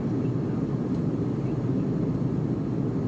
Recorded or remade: recorded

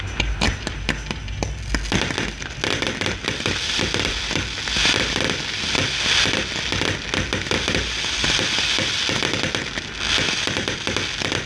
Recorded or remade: recorded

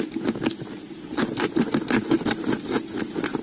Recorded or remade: recorded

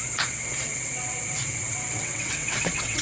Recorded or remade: remade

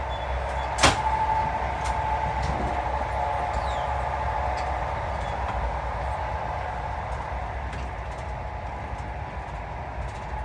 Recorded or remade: recorded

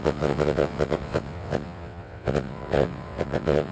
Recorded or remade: remade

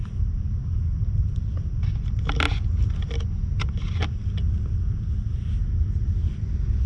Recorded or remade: recorded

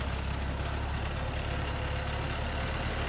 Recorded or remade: recorded